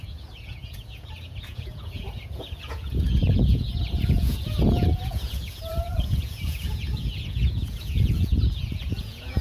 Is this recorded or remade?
remade